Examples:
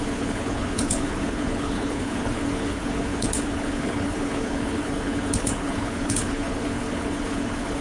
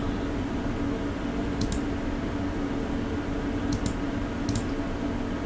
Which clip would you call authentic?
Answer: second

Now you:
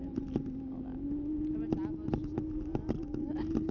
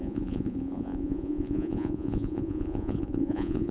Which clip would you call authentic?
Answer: first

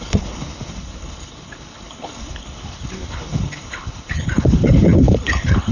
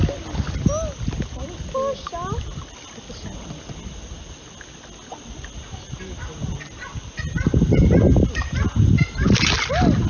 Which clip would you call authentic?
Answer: second